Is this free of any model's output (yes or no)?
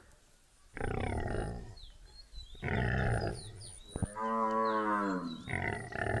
yes